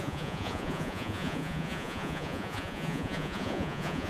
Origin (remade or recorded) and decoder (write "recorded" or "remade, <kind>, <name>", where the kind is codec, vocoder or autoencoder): remade, vocoder, Vocos